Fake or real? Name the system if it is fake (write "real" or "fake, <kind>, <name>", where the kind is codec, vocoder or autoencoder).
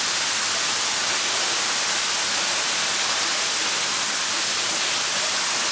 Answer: real